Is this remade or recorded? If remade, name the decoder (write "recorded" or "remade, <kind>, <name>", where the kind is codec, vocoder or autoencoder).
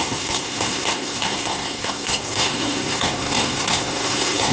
remade, codec, SNAC